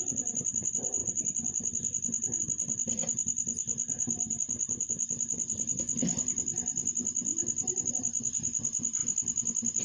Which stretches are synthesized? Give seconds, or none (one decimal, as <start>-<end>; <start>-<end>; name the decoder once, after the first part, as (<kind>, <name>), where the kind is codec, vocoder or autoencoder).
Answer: 0.0-7.3 (vocoder, BigVGAN v2); 7.9-9.0